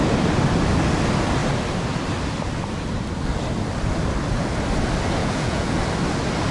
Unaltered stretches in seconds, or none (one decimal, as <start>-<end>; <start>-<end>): 0.0-5.2; 5.8-6.5